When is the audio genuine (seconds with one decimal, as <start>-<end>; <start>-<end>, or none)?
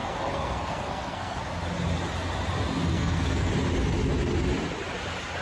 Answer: 1.4-2.9; 3.5-5.4